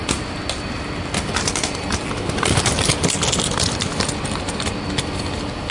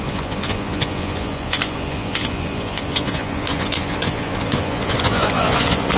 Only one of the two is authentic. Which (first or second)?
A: first